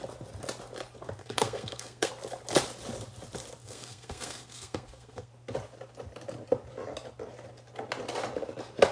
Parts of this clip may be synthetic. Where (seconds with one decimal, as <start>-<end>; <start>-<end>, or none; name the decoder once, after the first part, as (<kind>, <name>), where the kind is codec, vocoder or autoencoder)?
1.2-2.1 (codec, SNAC); 3.6-5.3